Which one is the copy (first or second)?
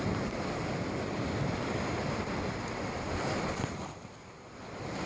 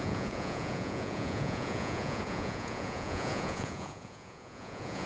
second